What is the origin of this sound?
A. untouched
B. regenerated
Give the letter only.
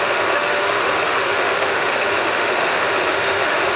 B